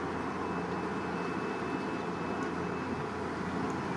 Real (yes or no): yes